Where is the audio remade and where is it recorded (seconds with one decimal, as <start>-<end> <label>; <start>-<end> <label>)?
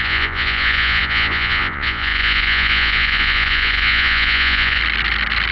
0.0-4.8 remade; 4.8-5.5 recorded